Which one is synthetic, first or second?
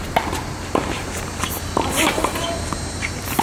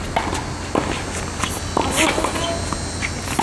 first